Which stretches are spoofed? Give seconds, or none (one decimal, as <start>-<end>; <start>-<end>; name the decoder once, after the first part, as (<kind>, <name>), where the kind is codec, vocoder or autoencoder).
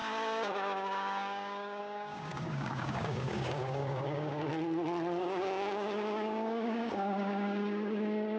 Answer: 0.0-4.5 (codec, DAC); 5.2-8.4